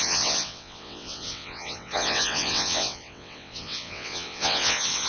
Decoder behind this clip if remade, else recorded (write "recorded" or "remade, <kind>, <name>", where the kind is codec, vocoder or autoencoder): remade, vocoder, WaveNeXt